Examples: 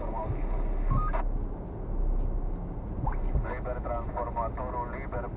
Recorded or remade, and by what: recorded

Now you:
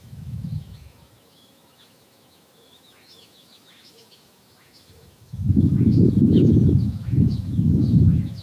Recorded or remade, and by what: remade, autoencoder, DAC-VAE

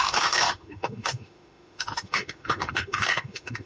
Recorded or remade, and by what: remade, autoencoder, DAC-VAE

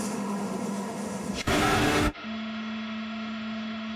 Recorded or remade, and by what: remade, autoencoder, DAC-VAE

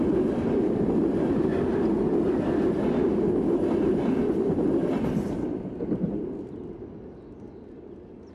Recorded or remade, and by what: recorded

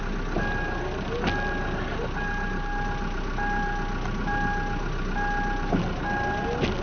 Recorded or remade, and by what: recorded